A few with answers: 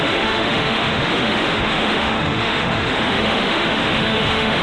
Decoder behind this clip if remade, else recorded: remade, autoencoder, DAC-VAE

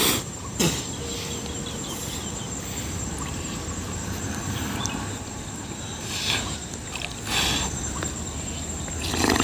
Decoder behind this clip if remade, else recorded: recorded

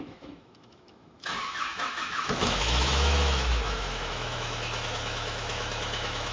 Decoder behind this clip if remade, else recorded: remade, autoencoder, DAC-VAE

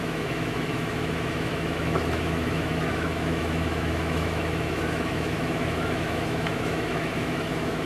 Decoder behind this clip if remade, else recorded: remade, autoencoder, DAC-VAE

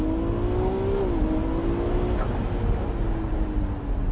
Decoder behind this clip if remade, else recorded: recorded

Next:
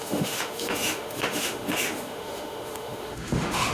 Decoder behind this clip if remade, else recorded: remade, autoencoder, DAC-VAE